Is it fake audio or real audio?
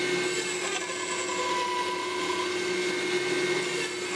real